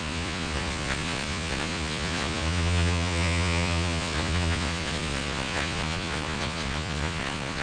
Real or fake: fake